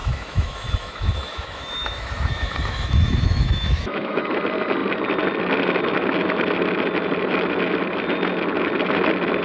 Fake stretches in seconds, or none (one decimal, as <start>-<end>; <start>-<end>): 0.0-4.2